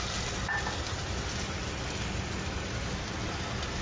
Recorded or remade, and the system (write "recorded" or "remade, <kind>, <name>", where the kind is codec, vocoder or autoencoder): recorded